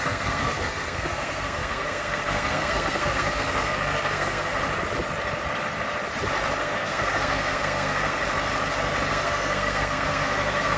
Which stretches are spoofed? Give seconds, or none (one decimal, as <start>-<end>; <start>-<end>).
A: 0.0-4.5; 6.6-8.2; 9.1-10.8